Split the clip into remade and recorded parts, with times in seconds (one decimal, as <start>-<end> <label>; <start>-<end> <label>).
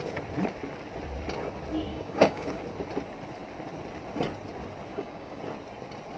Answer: 0.0-1.9 recorded; 1.9-2.6 remade; 2.6-4.9 recorded; 4.9-5.4 remade; 5.4-6.2 recorded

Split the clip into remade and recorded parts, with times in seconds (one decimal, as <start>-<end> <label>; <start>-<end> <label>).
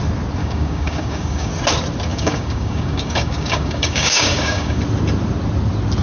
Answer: 0.0-0.4 recorded; 0.4-1.5 remade; 1.5-2.1 recorded; 2.1-4.8 remade; 4.8-6.0 recorded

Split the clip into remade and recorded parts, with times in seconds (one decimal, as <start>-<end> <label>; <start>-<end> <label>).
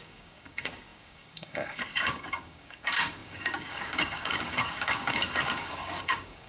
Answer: 0.0-6.5 remade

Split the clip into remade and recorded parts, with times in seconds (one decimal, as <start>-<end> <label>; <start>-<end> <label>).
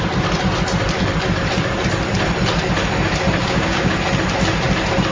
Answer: 0.0-3.4 recorded; 3.4-3.9 remade; 3.9-5.1 recorded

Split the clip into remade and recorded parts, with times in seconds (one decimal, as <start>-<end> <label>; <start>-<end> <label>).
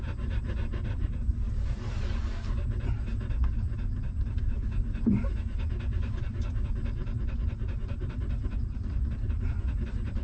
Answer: 0.0-10.2 recorded